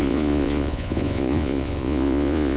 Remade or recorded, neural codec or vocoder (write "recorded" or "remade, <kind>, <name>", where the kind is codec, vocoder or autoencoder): remade, vocoder, Vocos